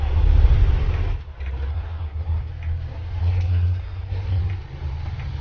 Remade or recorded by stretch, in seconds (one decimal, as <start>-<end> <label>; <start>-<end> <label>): 0.0-1.7 recorded; 1.7-2.5 remade; 2.5-3.2 recorded; 3.2-4.4 remade; 4.4-5.4 recorded